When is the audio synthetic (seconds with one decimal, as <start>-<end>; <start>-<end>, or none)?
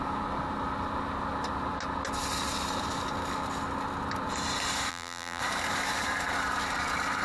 4.9-5.4